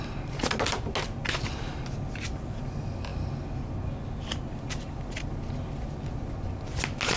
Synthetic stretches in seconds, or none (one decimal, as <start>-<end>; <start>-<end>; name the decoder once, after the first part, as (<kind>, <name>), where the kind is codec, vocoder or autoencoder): none